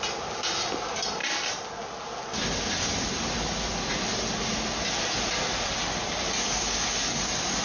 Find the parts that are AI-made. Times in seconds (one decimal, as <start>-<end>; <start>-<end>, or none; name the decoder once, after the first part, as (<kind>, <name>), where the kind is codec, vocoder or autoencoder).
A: none